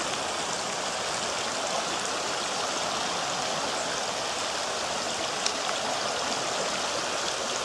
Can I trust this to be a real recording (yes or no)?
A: yes